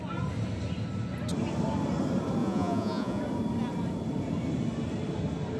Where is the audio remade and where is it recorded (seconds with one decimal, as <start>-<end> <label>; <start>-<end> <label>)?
0.0-2.4 recorded; 2.4-3.2 remade; 3.2-5.6 recorded